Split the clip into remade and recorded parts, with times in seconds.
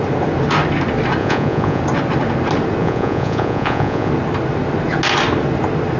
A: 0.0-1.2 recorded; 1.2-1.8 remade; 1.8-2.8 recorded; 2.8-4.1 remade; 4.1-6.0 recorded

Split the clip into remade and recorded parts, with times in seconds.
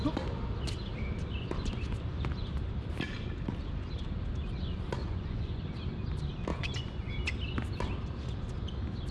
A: 0.0-5.0 recorded; 5.0-5.7 remade; 5.7-6.5 recorded; 6.5-7.1 remade; 7.1-9.1 recorded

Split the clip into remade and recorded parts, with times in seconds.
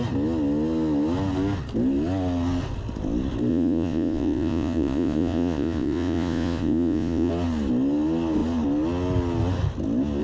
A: 0.0-3.5 recorded; 3.5-7.3 remade; 7.3-10.2 recorded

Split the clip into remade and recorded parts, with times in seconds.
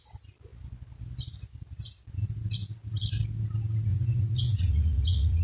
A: 0.0-3.9 recorded; 3.9-5.4 remade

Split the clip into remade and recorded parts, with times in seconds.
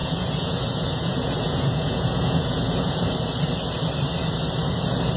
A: 0.0-3.1 remade; 3.1-5.2 recorded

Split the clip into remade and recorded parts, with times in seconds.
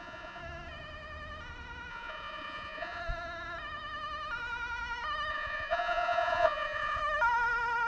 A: 0.0-0.4 remade; 0.4-1.9 recorded; 1.9-3.0 remade; 3.0-5.3 recorded; 5.3-7.0 remade; 7.0-7.9 recorded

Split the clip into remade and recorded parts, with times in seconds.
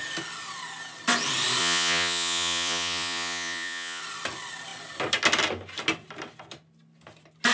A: 0.0-1.6 recorded; 1.6-4.0 remade; 4.0-7.5 recorded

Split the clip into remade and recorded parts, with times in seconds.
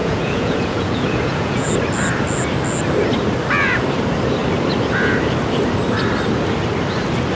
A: 0.0-1.7 remade; 1.7-7.3 recorded